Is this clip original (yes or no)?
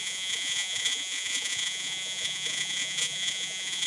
no